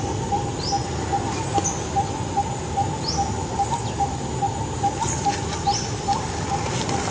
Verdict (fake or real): real